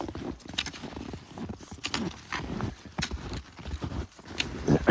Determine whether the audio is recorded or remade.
recorded